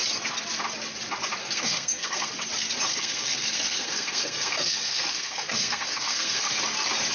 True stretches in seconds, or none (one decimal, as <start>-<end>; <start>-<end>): 0.0-1.4; 2.3-2.9; 6.6-7.1